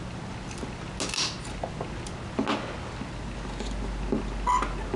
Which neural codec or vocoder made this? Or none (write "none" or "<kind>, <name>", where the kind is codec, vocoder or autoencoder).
none